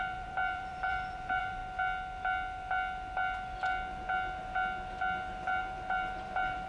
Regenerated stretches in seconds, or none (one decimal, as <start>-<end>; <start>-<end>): 0.0-1.6; 5.6-6.7